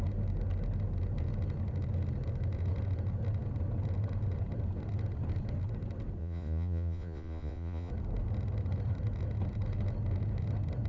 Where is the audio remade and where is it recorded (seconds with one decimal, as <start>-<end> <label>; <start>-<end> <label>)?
0.0-6.2 recorded; 6.2-7.9 remade; 7.9-10.9 recorded